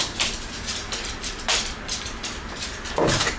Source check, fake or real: fake